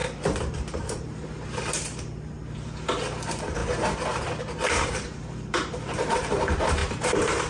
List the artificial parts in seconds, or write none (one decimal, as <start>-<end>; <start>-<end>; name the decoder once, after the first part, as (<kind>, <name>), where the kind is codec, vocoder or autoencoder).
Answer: 0.0-7.5 (vocoder, BigVGAN v2)